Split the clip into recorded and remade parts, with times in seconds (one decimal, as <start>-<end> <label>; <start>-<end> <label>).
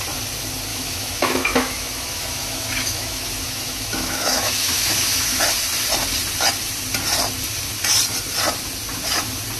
0.0-0.7 recorded; 0.7-5.4 remade; 5.4-9.6 recorded